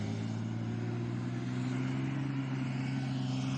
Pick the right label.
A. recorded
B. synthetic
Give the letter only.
A